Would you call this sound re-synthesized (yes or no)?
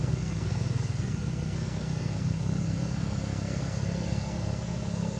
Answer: yes